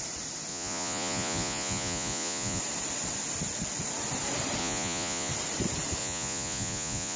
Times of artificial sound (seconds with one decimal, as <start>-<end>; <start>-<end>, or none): 0.5-2.6; 4.6-5.3; 6.0-7.2